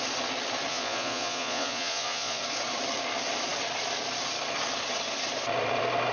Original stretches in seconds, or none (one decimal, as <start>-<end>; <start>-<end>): 0.0-0.7; 2.4-6.1